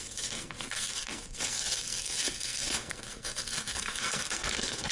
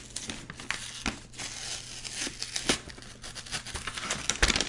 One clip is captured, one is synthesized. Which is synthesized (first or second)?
first